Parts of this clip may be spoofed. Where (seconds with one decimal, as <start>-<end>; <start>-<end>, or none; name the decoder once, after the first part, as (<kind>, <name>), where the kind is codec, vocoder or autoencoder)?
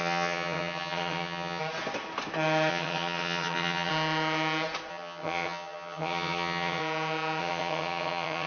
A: 0.0-1.6 (vocoder, HiFi-GAN); 2.7-3.9; 4.9-6.8; 7.4-8.5